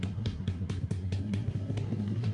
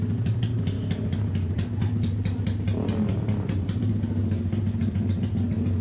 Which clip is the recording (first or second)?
second